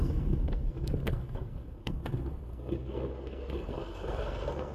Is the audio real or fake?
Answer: fake